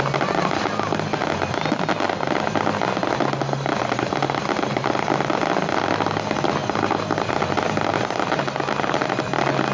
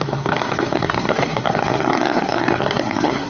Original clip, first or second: first